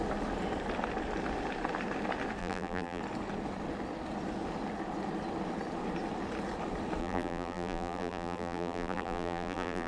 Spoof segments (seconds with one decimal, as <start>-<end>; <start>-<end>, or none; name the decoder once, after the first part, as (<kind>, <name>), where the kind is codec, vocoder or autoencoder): 2.4-3.0 (vocoder, BigVGAN v2); 7.0-9.9